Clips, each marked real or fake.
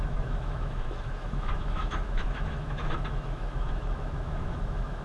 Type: fake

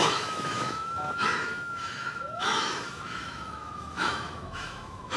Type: fake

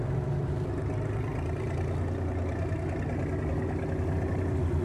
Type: real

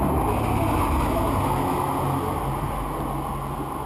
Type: real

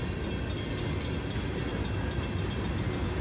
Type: real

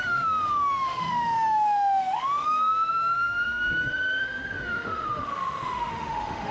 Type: fake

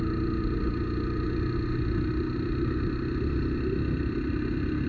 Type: real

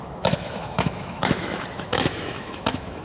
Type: fake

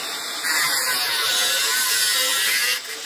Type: real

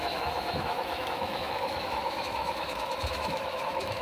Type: fake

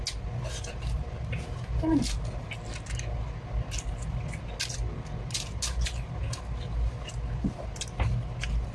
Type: real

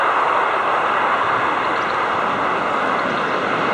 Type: real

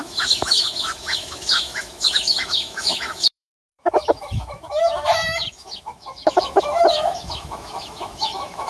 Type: fake